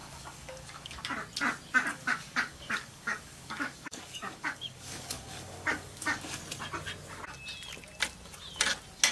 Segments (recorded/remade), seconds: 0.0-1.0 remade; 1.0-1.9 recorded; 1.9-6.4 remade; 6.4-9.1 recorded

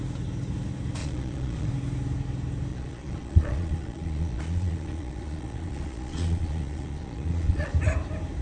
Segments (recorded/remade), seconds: 0.0-1.0 recorded; 1.0-1.7 remade; 1.7-2.7 recorded; 2.7-7.7 remade; 7.7-8.4 recorded

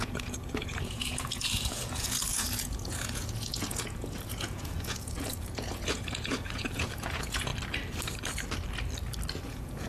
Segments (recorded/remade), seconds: 0.0-7.5 remade; 7.5-9.3 recorded; 9.3-9.9 remade

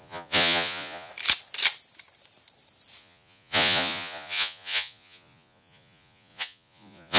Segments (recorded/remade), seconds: 0.0-1.1 remade; 1.1-3.0 recorded; 3.0-7.2 remade